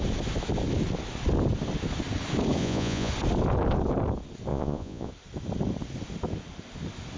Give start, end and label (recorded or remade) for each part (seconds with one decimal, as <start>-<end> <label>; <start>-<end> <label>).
0.0-2.6 recorded; 2.6-3.1 remade; 3.1-4.5 recorded; 4.5-5.1 remade; 5.1-7.2 recorded